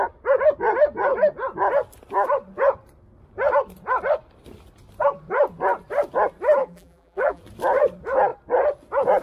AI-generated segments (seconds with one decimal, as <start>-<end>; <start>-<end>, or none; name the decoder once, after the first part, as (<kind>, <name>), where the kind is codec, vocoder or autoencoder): 6.6-7.4 (vocoder, BigVGAN v2)

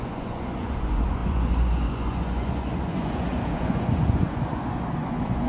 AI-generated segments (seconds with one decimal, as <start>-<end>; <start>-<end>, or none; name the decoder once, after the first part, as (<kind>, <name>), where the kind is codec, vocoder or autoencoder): 0.0-5.5 (vocoder, Vocos)

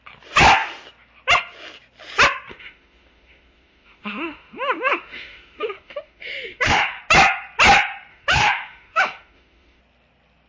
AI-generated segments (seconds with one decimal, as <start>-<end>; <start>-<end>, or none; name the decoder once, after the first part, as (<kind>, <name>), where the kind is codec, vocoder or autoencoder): 2.5-7.0 (autoencoder, DAC-VAE); 8.1-9.8